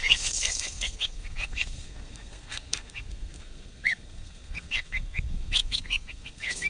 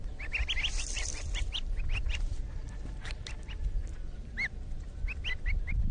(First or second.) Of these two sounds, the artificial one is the first